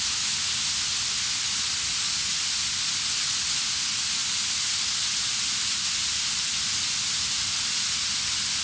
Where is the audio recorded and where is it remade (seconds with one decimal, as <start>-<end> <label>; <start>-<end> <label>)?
0.0-8.6 recorded